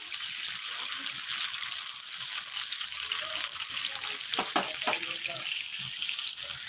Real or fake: real